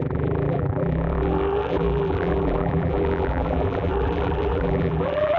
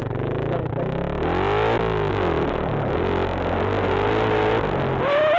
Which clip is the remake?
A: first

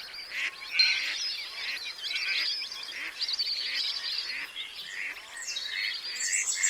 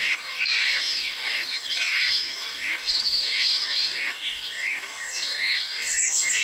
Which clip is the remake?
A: second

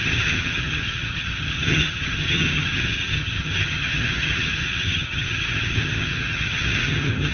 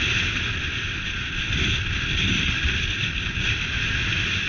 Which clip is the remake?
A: first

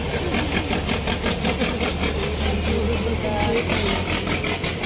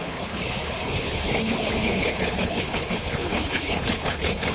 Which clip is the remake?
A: second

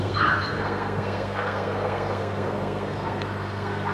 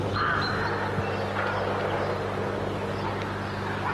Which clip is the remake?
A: first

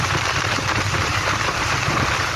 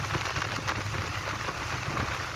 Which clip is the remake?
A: first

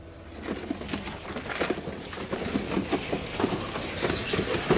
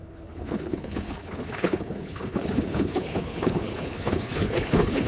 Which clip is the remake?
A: second